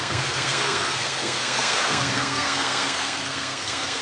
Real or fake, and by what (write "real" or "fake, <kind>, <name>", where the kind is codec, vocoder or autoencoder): fake, codec, SNAC